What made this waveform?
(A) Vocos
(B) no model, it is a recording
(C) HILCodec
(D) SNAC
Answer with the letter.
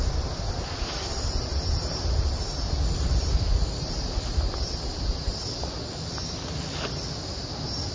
B